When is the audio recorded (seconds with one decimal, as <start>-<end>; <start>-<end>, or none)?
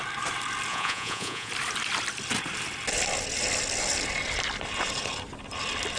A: 0.0-0.7; 1.5-6.0